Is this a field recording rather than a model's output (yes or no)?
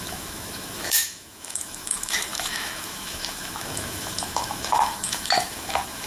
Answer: no